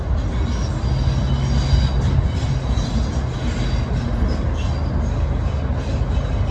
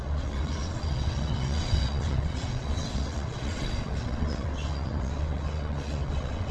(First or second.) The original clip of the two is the first